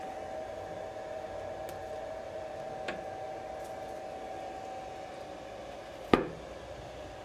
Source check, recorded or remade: recorded